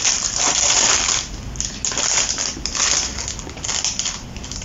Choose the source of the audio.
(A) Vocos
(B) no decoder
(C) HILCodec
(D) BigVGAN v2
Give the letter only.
B